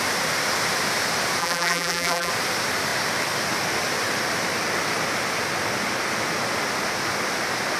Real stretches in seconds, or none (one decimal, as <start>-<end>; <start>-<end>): 0.0-1.4; 2.3-7.8